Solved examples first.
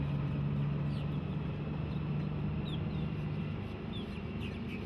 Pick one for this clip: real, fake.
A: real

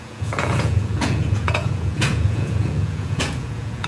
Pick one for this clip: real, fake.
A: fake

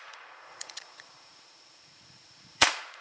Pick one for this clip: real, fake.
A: fake